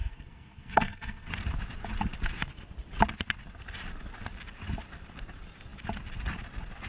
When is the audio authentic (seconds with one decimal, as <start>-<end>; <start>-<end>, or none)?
1.3-6.9

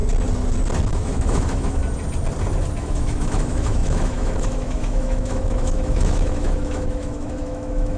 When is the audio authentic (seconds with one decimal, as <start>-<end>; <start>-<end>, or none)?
0.0-0.9; 1.8-2.8

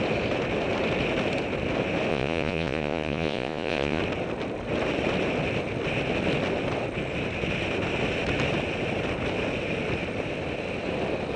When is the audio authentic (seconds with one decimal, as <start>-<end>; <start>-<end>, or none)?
0.0-2.1; 4.0-11.4

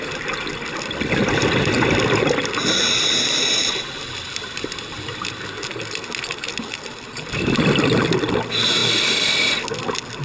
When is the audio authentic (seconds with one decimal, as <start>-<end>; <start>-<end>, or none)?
0.0-10.2

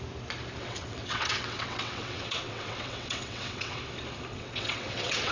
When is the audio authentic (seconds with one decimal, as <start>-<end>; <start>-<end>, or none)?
0.0-0.6; 3.8-4.3

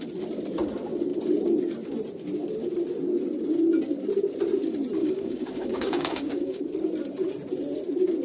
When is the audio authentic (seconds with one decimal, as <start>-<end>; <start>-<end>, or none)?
0.0-5.0; 6.6-8.2

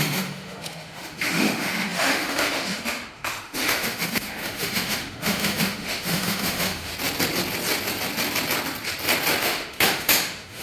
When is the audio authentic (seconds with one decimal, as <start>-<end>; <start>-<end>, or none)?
6.9-9.4